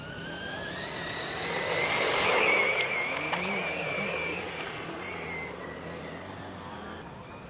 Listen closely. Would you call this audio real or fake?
real